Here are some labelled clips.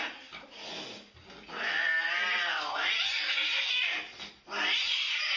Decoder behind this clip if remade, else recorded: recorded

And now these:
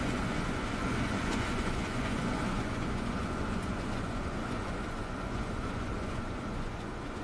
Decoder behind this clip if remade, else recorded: remade, vocoder, Vocos